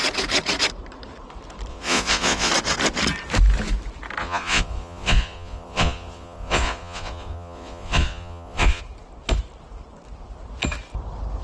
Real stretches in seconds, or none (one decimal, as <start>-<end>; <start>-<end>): 0.0-1.7; 2.5-4.2; 8.8-11.4